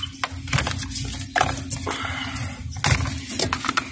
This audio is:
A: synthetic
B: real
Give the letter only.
B